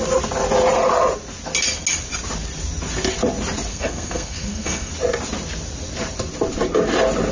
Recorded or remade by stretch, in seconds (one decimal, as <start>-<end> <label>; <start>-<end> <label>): 0.0-3.7 recorded; 3.7-4.9 remade; 4.9-7.3 recorded